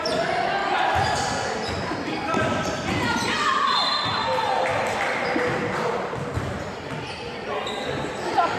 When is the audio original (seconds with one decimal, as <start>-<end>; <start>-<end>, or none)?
none